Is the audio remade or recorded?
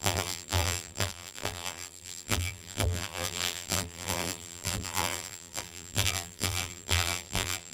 remade